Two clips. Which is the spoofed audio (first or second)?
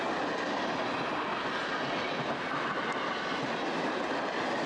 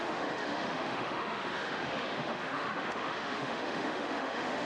second